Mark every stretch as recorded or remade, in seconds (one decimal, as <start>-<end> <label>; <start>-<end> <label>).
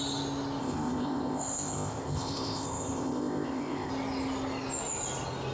0.0-0.6 recorded; 0.6-3.9 remade; 3.9-5.5 recorded